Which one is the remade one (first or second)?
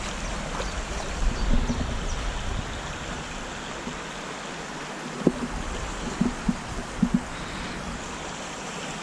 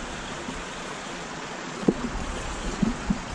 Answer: second